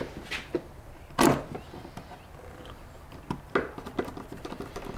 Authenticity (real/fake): real